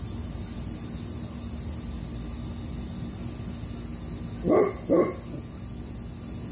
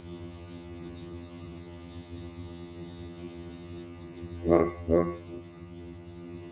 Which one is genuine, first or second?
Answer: first